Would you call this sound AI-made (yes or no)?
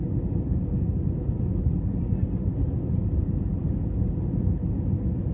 no